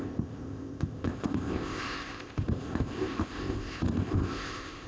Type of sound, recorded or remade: remade